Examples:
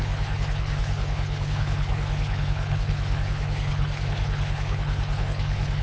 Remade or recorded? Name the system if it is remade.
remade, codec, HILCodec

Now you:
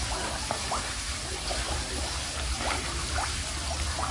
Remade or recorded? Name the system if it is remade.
recorded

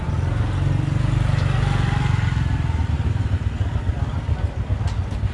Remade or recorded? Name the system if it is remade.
recorded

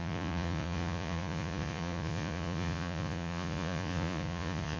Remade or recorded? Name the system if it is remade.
remade, vocoder, Vocos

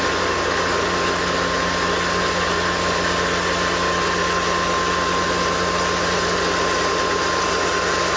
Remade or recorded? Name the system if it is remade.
recorded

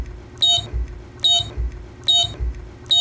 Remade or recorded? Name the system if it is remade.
recorded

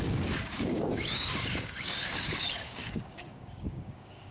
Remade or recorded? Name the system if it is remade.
remade, codec, DAC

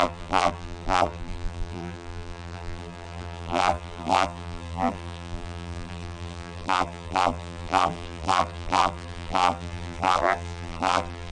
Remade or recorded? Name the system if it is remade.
remade, vocoder, BigVGAN v2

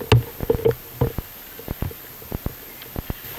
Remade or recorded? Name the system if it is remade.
recorded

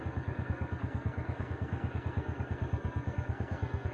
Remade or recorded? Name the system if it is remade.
remade, codec, SNAC